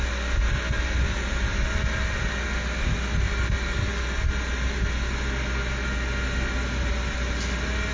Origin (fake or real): real